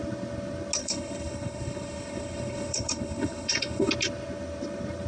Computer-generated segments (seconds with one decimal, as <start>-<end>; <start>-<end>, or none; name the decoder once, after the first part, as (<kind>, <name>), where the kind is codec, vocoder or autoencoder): 0.8-3.9 (codec, HILCodec)